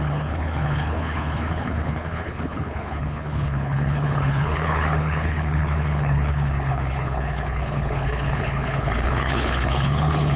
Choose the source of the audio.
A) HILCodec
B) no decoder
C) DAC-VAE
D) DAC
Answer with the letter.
A